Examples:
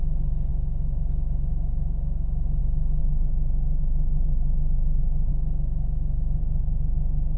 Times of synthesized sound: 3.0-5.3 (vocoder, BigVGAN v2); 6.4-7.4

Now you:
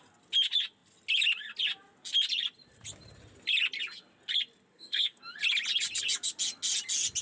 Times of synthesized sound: 4.7-5.2 (codec, SNAC)

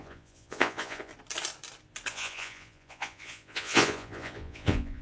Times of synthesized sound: 0.0-1.1 (vocoder, Vocos); 2.1-5.0